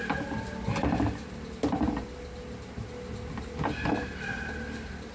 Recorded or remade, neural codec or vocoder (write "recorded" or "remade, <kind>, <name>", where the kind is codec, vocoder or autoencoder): recorded